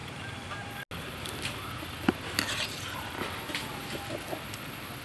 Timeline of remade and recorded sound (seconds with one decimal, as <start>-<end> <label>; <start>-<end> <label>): 0.0-5.0 recorded